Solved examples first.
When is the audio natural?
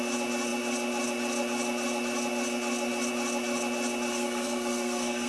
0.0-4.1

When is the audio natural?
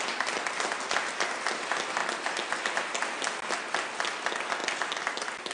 0.0-5.5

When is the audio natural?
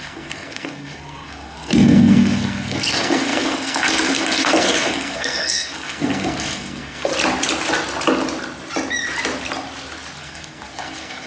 7.1-10.2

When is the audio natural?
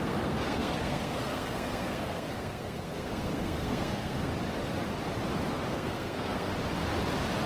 4.3-5.7; 6.5-7.5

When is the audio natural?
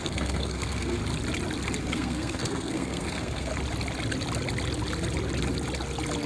1.0-1.8; 3.5-6.3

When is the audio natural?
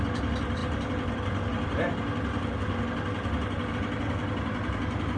0.0-5.2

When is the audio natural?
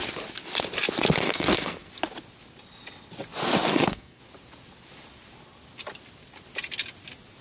0.0-1.2; 1.9-3.7; 4.2-7.4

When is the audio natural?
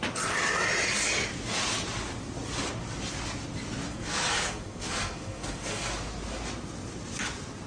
0.0-3.9; 5.9-7.7